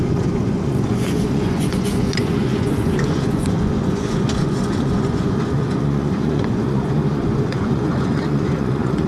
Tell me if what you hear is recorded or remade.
remade